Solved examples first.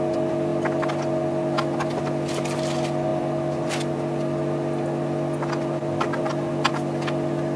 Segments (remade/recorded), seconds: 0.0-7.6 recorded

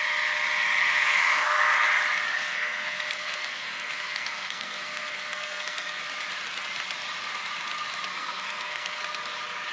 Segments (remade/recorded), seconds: 0.0-0.8 recorded; 0.8-1.6 remade; 1.6-2.4 recorded; 2.4-6.0 remade; 6.0-8.1 recorded; 8.1-9.0 remade; 9.0-9.7 recorded

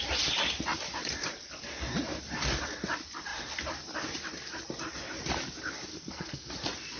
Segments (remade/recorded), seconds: 0.0-5.9 recorded; 5.9-6.5 remade; 6.5-7.0 recorded

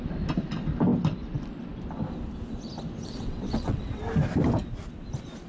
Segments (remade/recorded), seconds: 0.0-3.0 recorded; 3.0-4.0 remade; 4.0-5.5 recorded

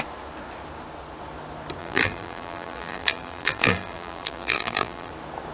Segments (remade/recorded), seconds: 0.0-1.8 recorded; 1.8-5.1 remade; 5.1-5.5 recorded